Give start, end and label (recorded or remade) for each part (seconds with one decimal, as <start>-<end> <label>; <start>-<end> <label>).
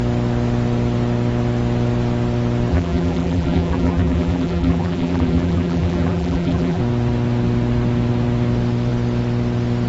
0.0-2.7 recorded; 2.7-6.8 remade; 6.8-9.9 recorded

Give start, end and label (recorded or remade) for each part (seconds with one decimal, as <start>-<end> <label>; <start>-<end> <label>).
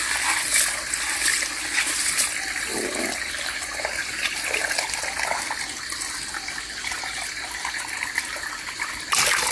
0.0-2.7 remade; 2.7-3.3 recorded; 3.3-4.6 remade; 4.6-9.5 recorded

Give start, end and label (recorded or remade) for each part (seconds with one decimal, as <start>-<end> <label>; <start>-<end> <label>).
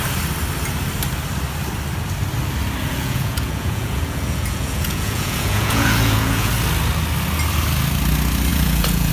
0.0-2.8 recorded; 2.8-6.5 remade; 6.5-8.5 recorded; 8.5-9.1 remade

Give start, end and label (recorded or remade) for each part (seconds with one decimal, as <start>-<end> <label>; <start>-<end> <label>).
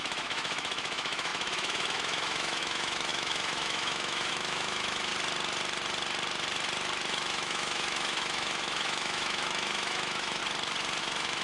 0.0-5.1 remade; 5.1-7.1 recorded; 7.1-10.4 remade; 10.4-11.0 recorded; 11.0-11.4 remade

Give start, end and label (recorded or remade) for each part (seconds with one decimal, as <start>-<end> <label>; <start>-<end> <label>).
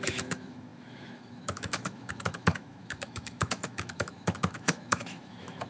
0.0-5.7 remade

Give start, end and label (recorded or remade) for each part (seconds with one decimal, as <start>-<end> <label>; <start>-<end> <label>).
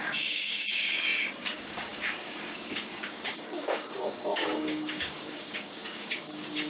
0.0-6.7 remade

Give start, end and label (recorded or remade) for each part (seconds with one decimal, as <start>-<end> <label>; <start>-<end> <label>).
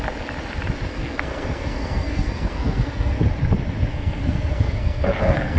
0.0-0.9 recorded; 0.9-3.2 remade; 3.2-3.9 recorded; 3.9-5.6 remade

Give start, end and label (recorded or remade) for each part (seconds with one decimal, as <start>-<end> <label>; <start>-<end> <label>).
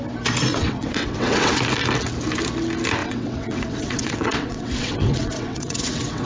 0.0-0.5 recorded; 0.5-1.6 remade; 1.6-3.0 recorded; 3.0-6.3 remade